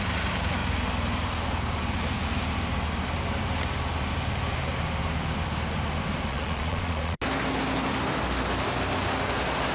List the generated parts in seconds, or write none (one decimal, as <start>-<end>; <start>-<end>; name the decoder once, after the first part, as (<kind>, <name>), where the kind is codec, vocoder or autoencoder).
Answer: 6.3-7.2 (vocoder, Vocos)

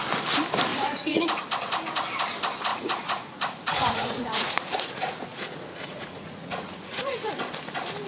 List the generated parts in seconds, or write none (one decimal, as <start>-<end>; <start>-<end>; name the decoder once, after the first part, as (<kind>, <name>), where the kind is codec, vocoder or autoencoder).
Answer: 0.7-1.4 (vocoder, Vocos); 2.7-7.3

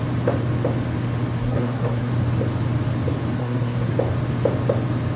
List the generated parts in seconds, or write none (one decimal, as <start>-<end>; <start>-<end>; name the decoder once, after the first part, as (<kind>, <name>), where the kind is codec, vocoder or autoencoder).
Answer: 1.4-2.1 (codec, SNAC); 3.4-3.9

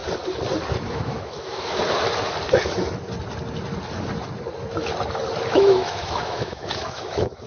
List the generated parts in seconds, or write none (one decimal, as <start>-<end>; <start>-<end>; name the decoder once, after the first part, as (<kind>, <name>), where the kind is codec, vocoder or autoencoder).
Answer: 0.9-1.8 (autoencoder, DAC-VAE); 5.5-7.5